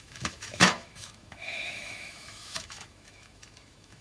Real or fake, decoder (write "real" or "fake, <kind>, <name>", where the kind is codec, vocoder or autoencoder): fake, autoencoder, DAC-VAE